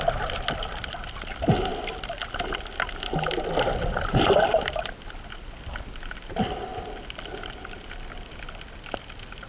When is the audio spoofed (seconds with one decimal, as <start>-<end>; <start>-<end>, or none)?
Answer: none